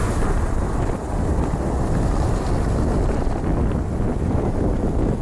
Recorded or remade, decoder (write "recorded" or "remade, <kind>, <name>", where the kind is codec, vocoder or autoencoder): recorded